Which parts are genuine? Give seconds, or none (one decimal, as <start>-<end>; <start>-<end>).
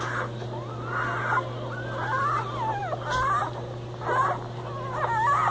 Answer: 0.0-5.5